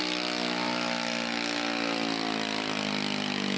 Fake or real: real